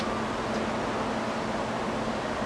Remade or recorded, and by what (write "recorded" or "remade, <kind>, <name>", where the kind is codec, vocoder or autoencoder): recorded